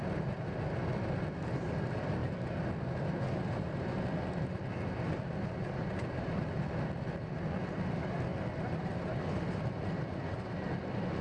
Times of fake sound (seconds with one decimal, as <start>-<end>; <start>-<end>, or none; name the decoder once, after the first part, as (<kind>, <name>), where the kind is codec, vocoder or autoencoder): none